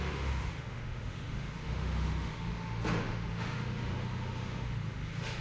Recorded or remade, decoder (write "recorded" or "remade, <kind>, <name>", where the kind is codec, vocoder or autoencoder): remade, autoencoder, DAC-VAE